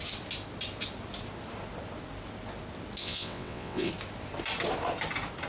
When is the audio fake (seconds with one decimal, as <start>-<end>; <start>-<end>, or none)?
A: 3.0-3.9